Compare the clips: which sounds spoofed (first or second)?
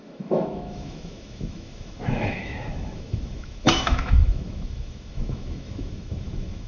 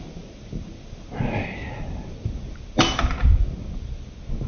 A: first